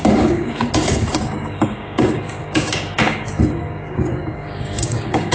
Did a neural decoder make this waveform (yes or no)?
yes